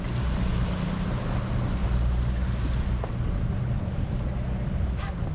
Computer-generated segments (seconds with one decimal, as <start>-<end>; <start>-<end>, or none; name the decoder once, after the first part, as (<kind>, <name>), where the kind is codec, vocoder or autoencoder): none